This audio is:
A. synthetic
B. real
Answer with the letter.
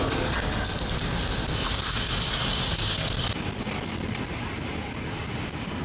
B